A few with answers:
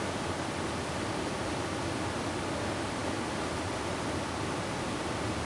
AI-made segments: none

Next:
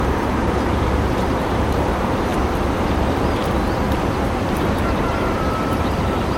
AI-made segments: 0.0-2.3 (vocoder, BigVGAN v2); 2.9-3.4; 4.4-6.4

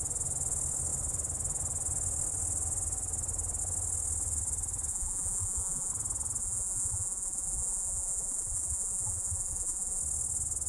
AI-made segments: 4.9-5.9 (vocoder, Vocos); 6.4-10.0

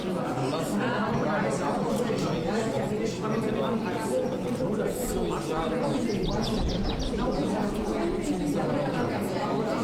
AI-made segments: none

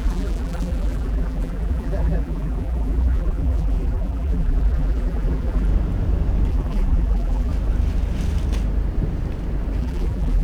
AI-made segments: 0.0-5.7 (vocoder, BigVGAN v2); 6.5-7.5; 9.8-10.4

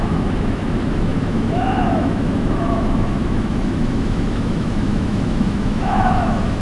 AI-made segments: 0.0-6.6 (autoencoder, DAC-VAE)

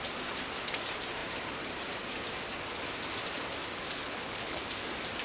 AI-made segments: 4.0-4.7 (codec, HILCodec)